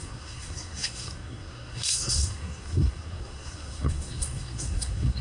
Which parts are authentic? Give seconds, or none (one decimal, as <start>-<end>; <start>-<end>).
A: none